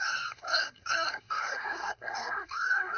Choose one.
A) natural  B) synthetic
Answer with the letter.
B